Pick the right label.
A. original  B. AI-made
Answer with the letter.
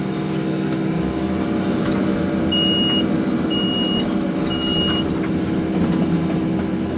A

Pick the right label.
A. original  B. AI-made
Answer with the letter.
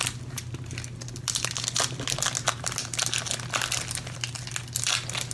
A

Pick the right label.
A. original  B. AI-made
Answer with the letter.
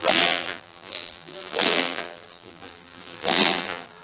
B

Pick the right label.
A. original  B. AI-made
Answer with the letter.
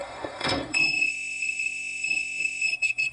B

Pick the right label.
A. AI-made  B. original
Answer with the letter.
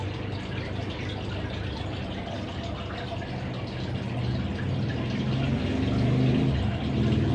B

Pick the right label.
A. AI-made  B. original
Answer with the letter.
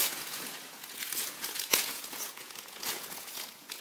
A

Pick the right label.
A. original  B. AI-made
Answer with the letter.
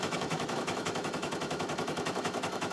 B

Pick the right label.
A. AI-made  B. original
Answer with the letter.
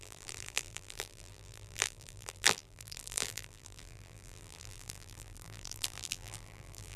A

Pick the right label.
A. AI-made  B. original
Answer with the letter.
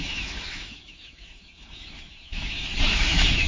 A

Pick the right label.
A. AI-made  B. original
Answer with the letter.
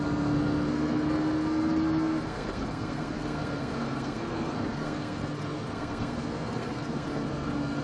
A